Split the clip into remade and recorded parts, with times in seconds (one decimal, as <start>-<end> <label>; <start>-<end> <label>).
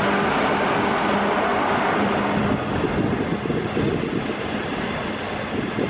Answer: 0.0-5.9 recorded